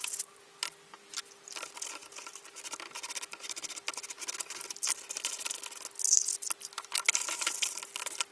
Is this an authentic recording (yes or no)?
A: yes